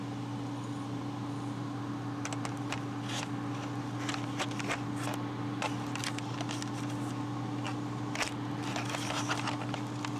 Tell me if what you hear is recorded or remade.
recorded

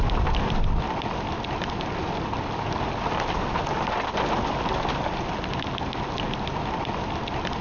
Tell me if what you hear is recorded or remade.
recorded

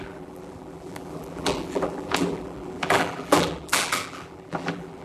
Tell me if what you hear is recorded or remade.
remade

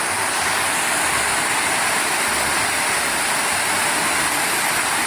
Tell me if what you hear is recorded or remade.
recorded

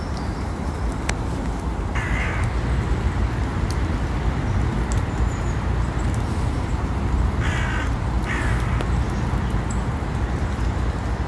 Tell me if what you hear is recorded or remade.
recorded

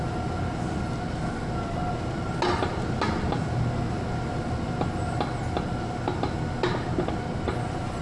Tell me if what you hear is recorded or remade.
recorded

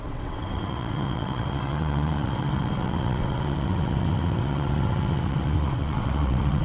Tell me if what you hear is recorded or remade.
remade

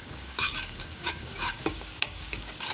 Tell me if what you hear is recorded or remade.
remade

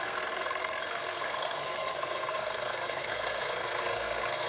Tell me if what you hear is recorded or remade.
remade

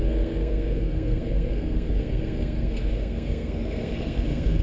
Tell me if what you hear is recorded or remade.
remade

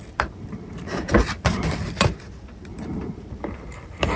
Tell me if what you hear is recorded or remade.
remade